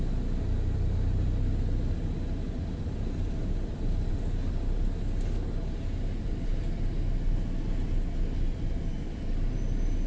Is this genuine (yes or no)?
yes